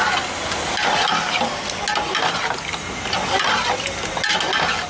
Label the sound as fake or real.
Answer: real